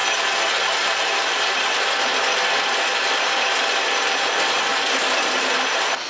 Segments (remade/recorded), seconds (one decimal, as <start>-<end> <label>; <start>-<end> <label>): 0.0-6.1 recorded